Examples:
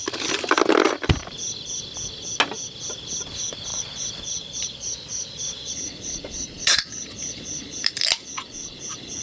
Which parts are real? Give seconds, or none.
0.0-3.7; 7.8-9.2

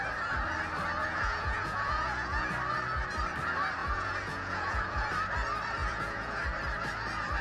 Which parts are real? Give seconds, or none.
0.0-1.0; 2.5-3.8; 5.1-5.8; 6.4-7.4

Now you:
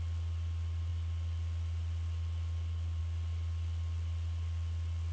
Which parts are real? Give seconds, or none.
0.0-5.1